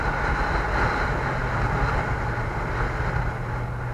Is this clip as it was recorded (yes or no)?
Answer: yes